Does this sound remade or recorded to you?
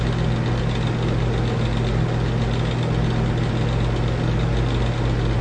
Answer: recorded